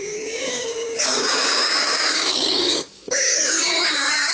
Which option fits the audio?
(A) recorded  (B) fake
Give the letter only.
B